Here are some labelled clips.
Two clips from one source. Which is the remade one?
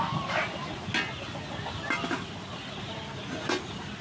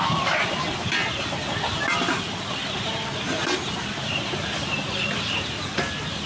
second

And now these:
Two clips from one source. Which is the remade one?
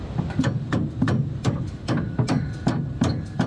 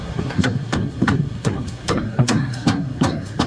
second